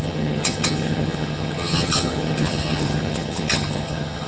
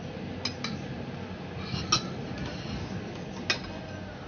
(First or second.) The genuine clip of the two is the second